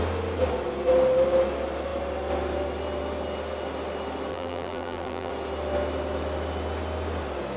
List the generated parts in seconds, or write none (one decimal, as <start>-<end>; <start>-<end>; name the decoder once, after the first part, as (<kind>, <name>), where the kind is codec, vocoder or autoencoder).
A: 4.3-5.3 (vocoder, BigVGAN v2)